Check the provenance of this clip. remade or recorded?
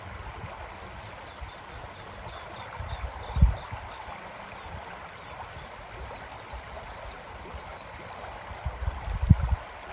recorded